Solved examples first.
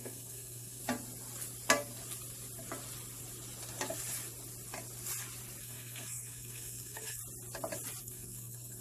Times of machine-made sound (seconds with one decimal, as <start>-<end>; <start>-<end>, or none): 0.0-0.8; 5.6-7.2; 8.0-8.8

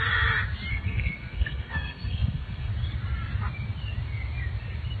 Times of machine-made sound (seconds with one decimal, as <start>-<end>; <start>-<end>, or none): 0.7-2.7

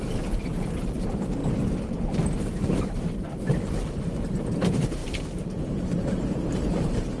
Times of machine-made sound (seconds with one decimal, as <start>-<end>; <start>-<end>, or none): 0.0-1.4; 2.7-7.2

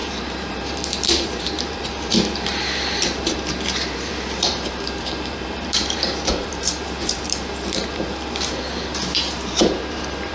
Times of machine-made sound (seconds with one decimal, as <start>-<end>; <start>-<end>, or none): 0.0-10.3